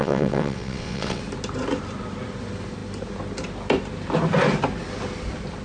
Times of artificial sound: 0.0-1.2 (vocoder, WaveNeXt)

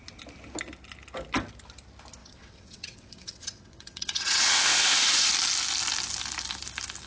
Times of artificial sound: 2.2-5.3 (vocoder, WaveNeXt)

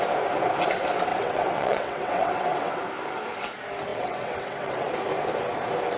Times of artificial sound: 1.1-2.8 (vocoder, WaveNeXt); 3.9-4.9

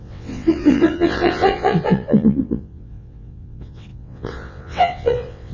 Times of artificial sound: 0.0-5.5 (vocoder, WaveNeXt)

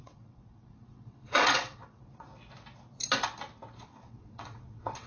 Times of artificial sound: 0.0-2.3 (vocoder, WaveNeXt); 3.7-5.1

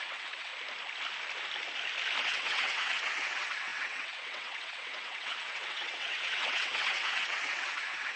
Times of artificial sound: 0.0-0.5 (vocoder, WaveNeXt); 2.2-8.2

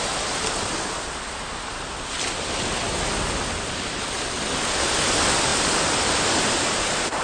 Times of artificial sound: none